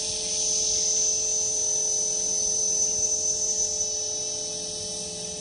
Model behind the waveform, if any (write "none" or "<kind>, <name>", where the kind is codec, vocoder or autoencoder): none